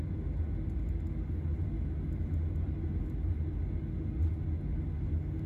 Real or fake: real